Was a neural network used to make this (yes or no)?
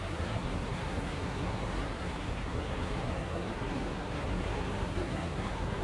yes